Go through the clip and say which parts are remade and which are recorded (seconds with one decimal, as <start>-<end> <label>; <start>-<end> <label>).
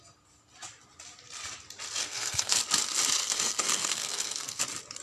0.0-2.0 recorded; 2.0-2.6 remade; 2.6-3.2 recorded; 3.2-4.6 remade; 4.6-5.0 recorded